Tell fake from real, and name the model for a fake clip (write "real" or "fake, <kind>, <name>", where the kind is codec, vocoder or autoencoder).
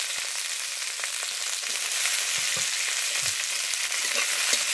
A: real